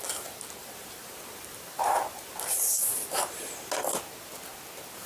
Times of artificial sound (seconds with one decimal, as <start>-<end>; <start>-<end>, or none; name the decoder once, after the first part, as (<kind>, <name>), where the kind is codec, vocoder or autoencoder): 0.6-3.7 (vocoder, BigVGAN v2)